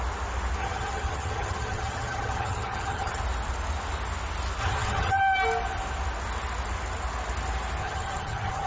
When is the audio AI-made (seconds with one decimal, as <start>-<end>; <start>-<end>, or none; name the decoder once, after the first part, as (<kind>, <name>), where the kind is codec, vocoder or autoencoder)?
0.6-3.2 (vocoder, HiFi-GAN); 4.6-5.2; 7.8-8.7